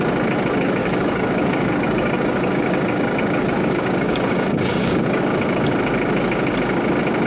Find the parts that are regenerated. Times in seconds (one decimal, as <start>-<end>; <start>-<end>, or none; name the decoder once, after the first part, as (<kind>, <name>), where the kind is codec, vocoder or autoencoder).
0.8-5.2 (codec, DAC)